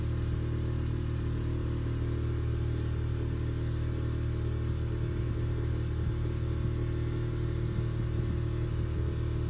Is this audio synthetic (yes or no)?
no